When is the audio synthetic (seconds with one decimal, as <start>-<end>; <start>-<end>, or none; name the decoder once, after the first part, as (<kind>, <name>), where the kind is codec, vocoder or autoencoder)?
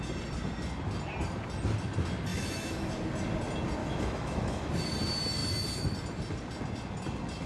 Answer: 2.3-2.9 (autoencoder, DAC-VAE); 3.8-4.7